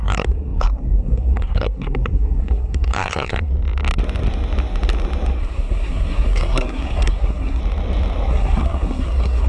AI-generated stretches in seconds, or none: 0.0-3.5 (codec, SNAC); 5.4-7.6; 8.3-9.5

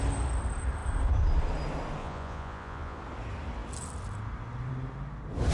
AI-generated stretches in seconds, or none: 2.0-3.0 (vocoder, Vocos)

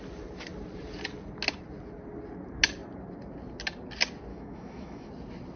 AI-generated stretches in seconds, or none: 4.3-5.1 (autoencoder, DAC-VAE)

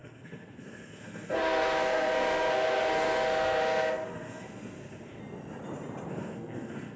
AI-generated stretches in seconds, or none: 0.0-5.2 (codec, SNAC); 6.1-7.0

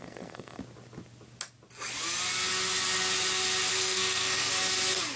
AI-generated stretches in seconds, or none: 0.0-0.6 (codec, SNAC); 3.7-4.5